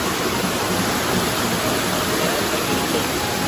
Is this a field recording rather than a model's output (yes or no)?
yes